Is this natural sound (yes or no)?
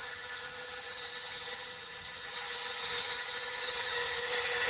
no